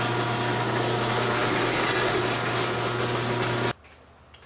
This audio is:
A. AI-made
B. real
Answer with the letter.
B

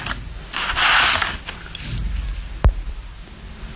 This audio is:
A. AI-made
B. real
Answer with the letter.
B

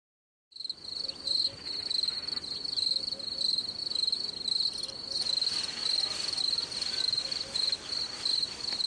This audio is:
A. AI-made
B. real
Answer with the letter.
B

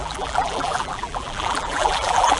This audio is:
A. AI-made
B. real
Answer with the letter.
A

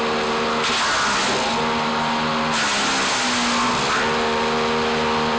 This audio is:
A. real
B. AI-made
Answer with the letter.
A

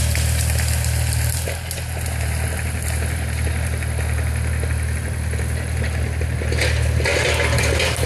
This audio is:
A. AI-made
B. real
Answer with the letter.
B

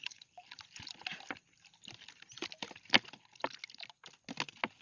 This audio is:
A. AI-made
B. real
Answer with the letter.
B